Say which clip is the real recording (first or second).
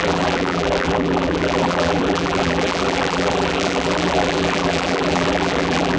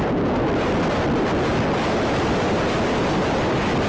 second